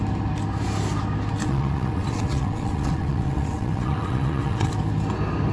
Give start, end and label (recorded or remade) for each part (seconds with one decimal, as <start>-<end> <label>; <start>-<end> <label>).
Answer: 0.0-1.4 recorded; 1.4-4.7 remade; 4.7-5.5 recorded